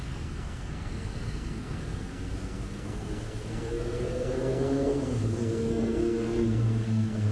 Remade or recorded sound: remade